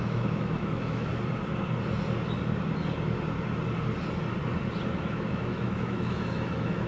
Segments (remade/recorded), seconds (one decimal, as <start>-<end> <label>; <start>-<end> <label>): 0.0-1.1 remade; 1.1-4.9 recorded; 4.9-6.9 remade